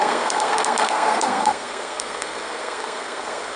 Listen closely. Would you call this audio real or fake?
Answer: fake